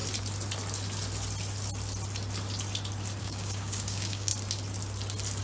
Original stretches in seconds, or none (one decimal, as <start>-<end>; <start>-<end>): 0.0-3.2; 4.3-5.4